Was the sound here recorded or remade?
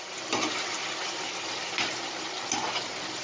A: recorded